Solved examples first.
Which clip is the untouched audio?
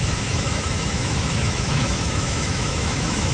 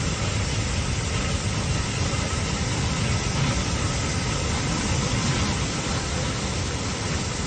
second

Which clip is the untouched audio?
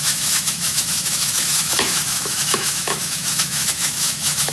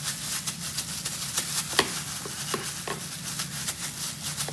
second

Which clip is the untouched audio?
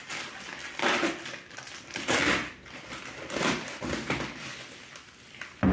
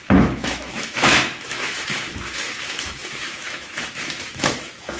first